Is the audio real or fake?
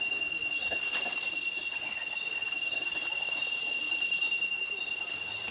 real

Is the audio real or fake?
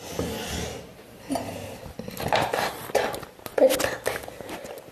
real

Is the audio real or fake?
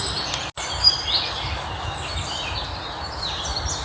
real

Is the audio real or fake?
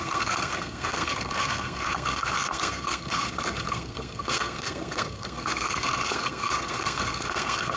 fake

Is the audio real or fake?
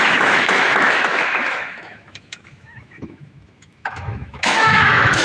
fake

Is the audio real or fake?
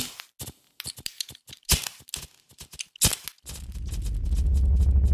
real